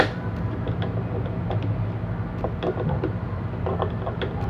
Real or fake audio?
real